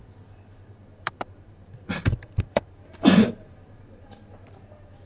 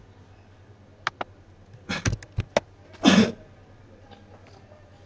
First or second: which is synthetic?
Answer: first